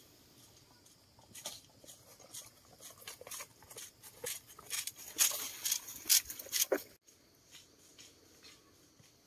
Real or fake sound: real